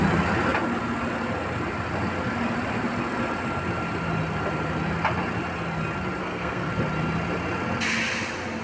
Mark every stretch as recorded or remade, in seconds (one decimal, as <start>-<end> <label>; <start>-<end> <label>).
0.0-6.2 recorded; 6.2-6.7 remade; 6.7-8.6 recorded